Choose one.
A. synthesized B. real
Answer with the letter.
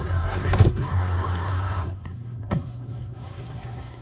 A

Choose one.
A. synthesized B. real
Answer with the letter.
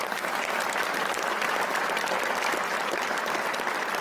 B